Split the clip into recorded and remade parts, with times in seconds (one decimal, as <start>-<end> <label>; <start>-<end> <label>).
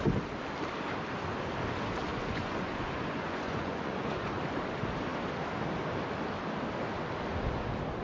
0.0-2.1 recorded; 2.1-4.4 remade; 4.4-8.0 recorded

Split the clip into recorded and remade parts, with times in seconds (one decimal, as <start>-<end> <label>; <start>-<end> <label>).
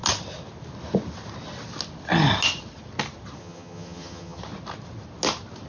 0.0-3.4 recorded; 3.4-4.4 remade; 4.4-5.7 recorded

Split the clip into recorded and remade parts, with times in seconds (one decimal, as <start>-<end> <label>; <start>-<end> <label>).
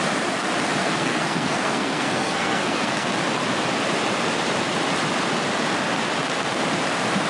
0.0-0.8 recorded; 0.8-3.1 remade; 3.1-7.3 recorded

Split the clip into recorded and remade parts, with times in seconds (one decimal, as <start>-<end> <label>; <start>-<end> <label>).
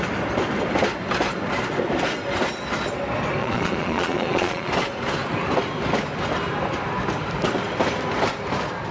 0.0-3.4 recorded; 3.4-4.7 remade; 4.7-8.9 recorded